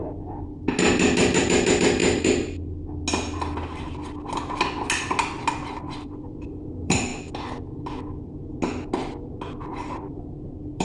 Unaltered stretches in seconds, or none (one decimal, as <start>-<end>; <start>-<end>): 0.0-1.4; 2.0-5.9; 7.1-9.6